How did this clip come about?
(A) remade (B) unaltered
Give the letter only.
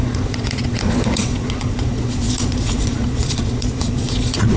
A